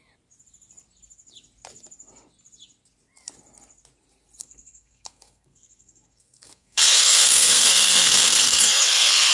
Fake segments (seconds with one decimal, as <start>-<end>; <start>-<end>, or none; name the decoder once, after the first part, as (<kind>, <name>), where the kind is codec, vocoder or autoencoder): 4.4-9.3 (codec, SNAC)